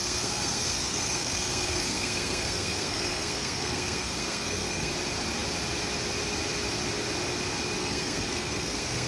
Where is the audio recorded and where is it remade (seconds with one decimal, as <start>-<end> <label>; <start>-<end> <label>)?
0.0-4.9 remade; 4.9-7.8 recorded; 7.8-9.1 remade